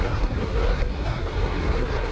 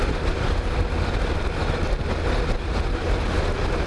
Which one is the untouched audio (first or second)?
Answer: second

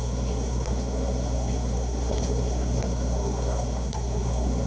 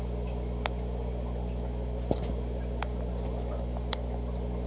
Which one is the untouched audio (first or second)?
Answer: second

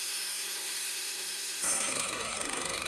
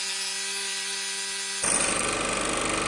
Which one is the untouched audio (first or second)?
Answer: second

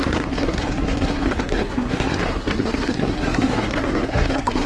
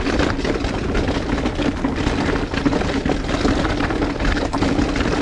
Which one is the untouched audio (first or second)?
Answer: second